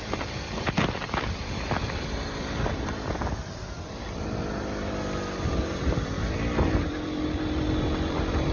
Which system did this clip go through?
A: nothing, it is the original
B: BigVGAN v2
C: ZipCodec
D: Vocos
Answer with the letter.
B